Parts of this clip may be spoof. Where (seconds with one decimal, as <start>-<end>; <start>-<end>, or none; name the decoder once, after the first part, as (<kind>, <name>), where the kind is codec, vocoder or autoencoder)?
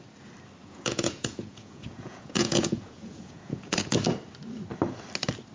0.6-3.9 (vocoder, Vocos)